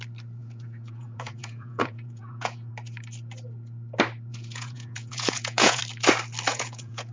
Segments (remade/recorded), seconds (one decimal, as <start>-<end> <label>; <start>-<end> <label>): 0.0-0.4 recorded; 0.4-2.7 remade; 2.7-4.3 recorded; 4.3-5.8 remade; 5.8-6.5 recorded; 6.5-7.1 remade